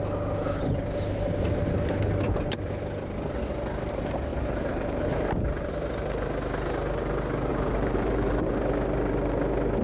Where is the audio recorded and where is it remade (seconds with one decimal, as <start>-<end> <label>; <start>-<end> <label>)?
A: 0.0-4.3 recorded; 4.3-5.7 remade; 5.7-7.5 recorded; 7.5-8.5 remade; 8.5-9.8 recorded